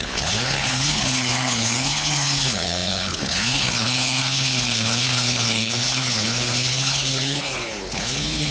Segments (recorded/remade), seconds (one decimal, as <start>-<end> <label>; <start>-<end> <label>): 0.0-8.5 remade